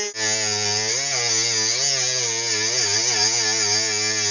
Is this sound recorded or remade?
recorded